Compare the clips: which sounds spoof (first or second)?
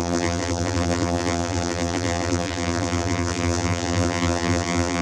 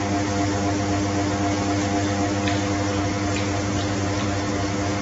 first